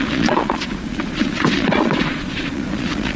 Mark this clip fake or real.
fake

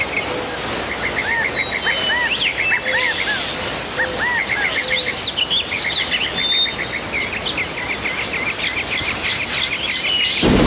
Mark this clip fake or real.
real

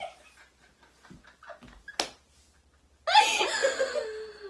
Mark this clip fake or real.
real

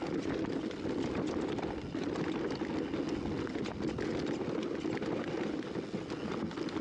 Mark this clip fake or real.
real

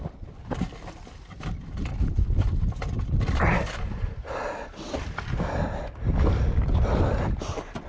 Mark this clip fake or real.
real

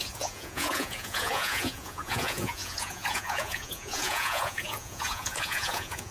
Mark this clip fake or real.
fake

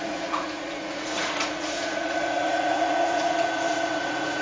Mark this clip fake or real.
fake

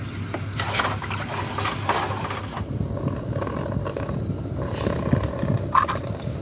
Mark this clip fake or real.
real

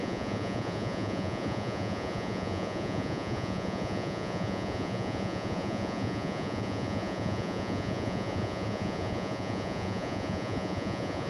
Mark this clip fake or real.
fake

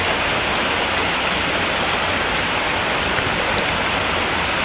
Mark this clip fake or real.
real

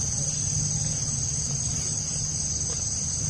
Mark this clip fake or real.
real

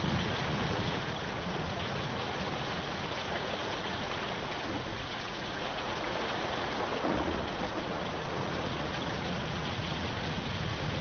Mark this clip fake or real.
fake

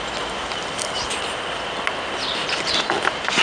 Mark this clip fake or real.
real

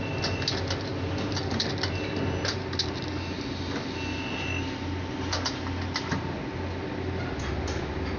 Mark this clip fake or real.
real